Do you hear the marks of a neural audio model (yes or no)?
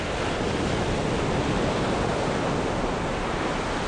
no